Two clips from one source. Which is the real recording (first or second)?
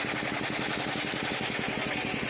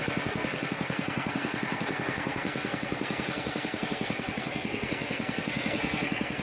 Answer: first